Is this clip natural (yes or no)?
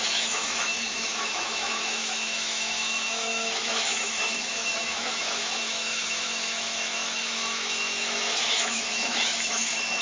no